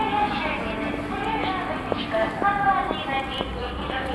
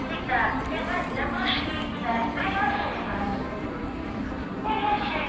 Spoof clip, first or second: second